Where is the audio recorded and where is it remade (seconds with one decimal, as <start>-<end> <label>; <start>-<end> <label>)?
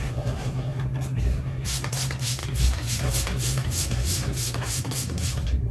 0.0-5.7 remade